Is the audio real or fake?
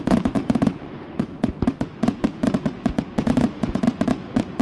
fake